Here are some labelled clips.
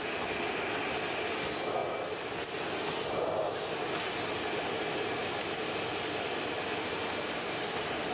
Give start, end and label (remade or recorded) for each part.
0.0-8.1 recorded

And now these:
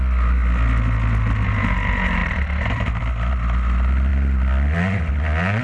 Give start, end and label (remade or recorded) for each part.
0.0-2.2 recorded; 2.2-3.3 remade; 3.3-5.6 recorded

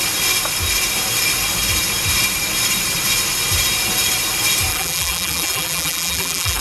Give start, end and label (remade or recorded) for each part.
0.0-4.7 recorded; 4.7-6.6 remade

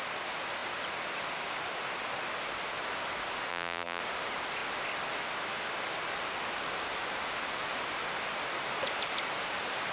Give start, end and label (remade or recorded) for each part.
0.0-3.5 recorded; 3.5-4.0 remade; 4.0-9.9 recorded

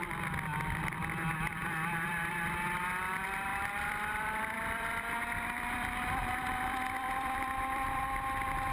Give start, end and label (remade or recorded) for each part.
0.0-1.5 recorded; 1.5-2.3 remade; 2.3-3.5 recorded; 3.5-8.0 remade; 8.0-8.7 recorded

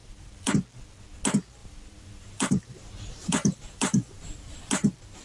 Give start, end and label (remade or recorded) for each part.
0.0-0.5 remade; 0.5-1.6 recorded; 1.6-4.7 remade; 4.7-5.2 recorded

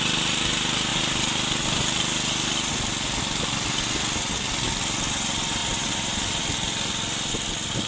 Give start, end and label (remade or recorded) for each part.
0.0-0.9 recorded; 0.9-1.6 remade; 1.6-5.6 recorded; 5.6-6.4 remade; 6.4-7.9 recorded